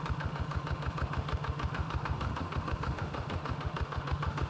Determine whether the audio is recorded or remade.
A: remade